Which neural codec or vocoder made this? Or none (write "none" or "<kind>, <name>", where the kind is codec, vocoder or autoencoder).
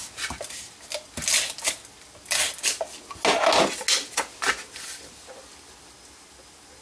none